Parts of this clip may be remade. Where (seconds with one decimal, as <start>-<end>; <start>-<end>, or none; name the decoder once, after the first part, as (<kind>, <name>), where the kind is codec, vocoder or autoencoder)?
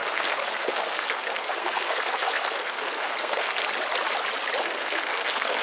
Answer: 0.0-3.6 (codec, SNAC); 4.6-5.6